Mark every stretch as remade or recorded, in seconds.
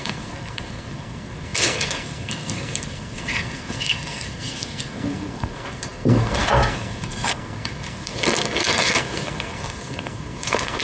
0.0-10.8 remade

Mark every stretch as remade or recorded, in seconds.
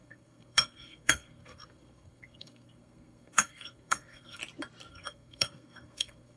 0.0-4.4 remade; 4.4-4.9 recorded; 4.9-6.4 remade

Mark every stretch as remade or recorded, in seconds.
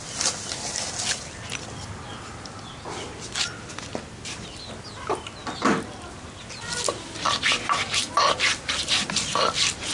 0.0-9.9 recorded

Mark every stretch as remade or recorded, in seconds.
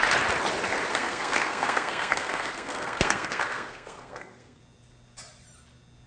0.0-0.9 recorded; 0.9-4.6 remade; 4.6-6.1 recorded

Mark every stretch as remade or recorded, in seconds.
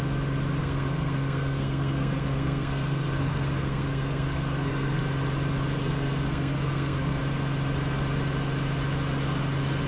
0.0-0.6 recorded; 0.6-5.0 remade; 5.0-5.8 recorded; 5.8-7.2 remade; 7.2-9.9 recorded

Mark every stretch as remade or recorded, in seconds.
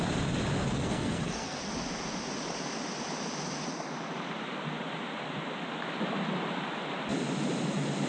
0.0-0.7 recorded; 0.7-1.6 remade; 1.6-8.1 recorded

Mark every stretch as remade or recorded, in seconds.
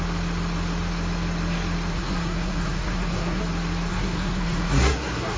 0.0-1.9 recorded; 1.9-3.4 remade; 3.4-3.9 recorded; 3.9-5.4 remade